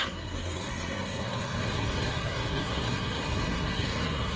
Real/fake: fake